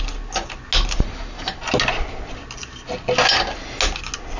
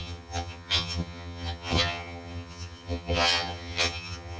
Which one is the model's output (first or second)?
second